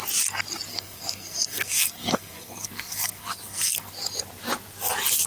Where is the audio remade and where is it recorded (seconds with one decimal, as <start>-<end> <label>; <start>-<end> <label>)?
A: 0.0-0.7 recorded; 0.7-3.9 remade; 3.9-5.3 recorded